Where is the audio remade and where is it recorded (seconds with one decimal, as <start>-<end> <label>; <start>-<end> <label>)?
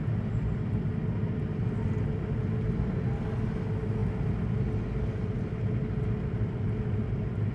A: 0.0-7.5 recorded